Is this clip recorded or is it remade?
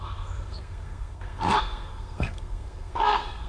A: remade